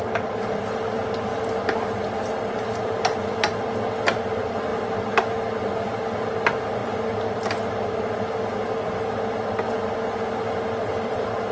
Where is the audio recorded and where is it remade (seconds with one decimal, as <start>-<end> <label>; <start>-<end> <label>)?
0.0-11.5 recorded